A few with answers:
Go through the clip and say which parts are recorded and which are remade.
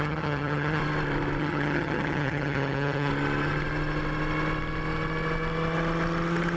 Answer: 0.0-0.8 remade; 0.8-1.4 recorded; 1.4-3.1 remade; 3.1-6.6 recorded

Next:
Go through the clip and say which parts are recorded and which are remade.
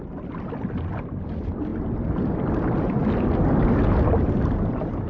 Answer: 0.0-5.1 recorded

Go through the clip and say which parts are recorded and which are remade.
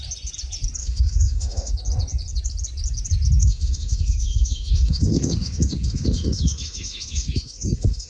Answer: 0.0-0.8 recorded; 0.8-1.7 remade; 1.7-3.4 recorded; 3.4-8.1 remade